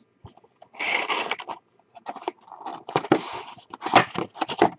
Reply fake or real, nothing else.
real